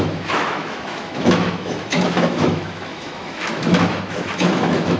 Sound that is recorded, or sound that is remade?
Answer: remade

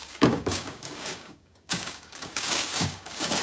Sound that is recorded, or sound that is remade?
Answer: remade